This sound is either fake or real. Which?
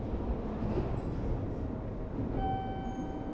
real